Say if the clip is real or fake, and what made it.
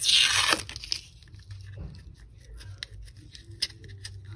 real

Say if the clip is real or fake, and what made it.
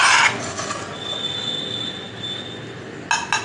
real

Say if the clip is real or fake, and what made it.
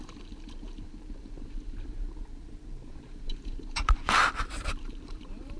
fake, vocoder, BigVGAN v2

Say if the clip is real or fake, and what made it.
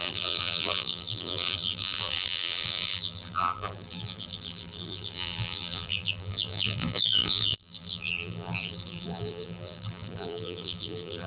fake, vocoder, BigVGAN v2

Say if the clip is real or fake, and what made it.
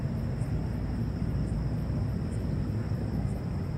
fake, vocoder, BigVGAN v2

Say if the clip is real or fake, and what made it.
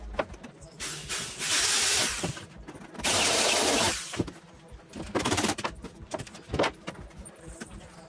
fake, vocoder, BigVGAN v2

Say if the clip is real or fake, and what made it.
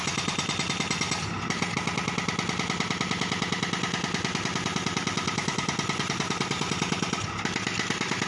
real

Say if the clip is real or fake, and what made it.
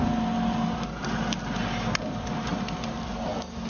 real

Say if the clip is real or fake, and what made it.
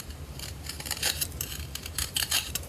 fake, vocoder, BigVGAN v2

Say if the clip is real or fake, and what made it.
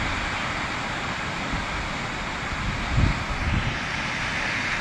real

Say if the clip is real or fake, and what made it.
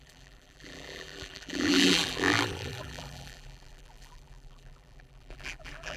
fake, vocoder, BigVGAN v2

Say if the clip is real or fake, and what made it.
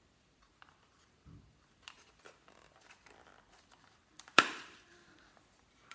fake, vocoder, BigVGAN v2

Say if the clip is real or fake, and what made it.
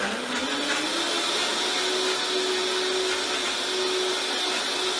real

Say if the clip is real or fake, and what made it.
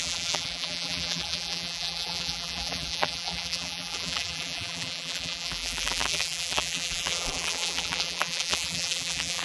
fake, vocoder, BigVGAN v2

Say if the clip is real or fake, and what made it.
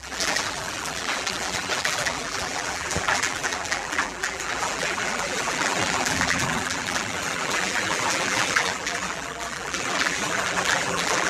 fake, vocoder, BigVGAN v2